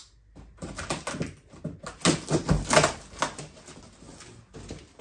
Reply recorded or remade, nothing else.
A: recorded